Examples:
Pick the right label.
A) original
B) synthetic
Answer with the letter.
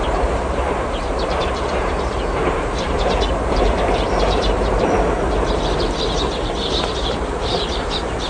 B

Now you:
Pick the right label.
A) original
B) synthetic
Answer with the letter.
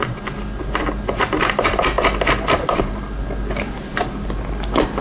A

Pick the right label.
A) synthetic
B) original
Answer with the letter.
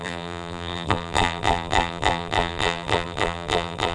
A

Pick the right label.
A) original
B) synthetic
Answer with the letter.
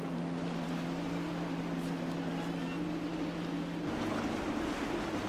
A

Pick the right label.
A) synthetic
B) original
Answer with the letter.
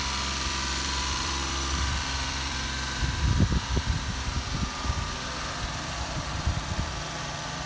A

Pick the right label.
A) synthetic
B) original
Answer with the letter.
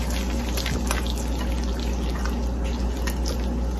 B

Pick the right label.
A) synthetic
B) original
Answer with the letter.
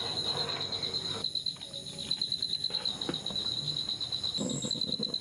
B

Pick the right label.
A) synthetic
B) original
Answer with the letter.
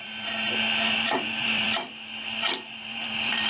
A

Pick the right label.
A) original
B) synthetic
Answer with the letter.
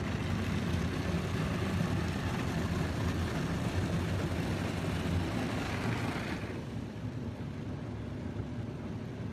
A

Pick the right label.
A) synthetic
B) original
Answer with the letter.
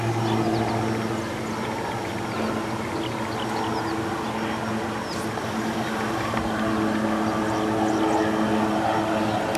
B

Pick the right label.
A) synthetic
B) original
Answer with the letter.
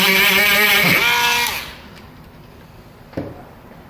B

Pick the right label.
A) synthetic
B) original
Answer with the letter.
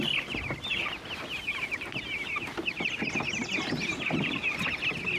B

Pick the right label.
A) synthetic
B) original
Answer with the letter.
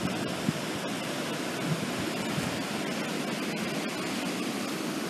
B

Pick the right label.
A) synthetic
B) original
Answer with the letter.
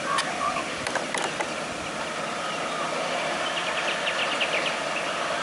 B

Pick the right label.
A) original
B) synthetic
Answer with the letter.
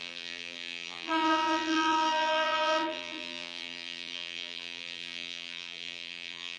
B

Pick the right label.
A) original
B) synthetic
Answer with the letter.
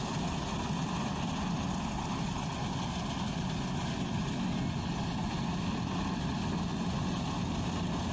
A